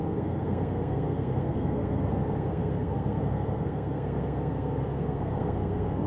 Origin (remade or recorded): remade